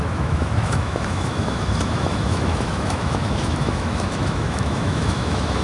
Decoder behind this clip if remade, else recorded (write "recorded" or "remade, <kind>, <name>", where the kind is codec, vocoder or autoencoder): remade, autoencoder, DAC-VAE